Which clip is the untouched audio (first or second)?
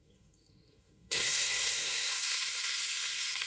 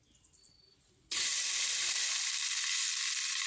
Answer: second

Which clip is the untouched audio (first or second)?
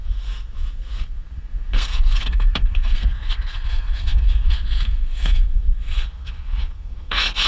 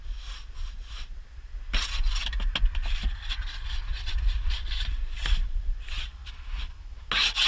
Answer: second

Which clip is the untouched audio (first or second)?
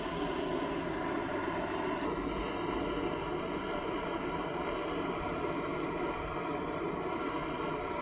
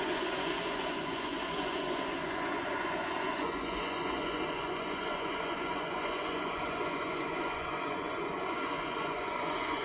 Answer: first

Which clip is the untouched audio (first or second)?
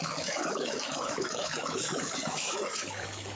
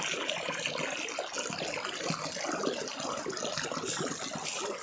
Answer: second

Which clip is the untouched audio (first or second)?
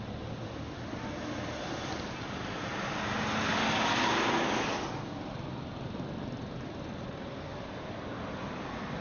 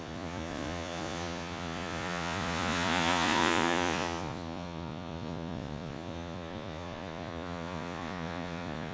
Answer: first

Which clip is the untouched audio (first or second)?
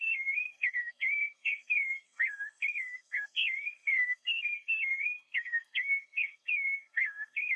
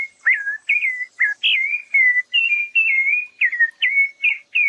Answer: second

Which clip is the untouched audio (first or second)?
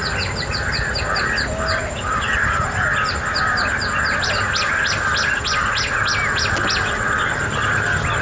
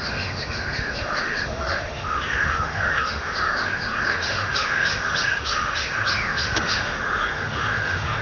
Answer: first